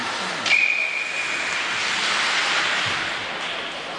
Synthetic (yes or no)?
no